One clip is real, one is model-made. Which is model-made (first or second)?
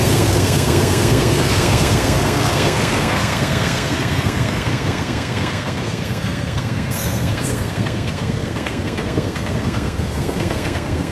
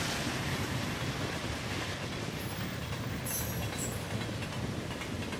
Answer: first